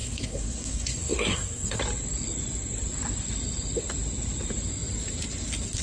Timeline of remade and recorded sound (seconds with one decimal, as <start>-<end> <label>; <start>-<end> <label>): 0.0-1.8 remade; 1.8-5.8 recorded